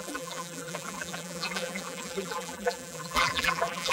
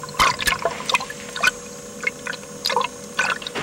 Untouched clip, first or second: second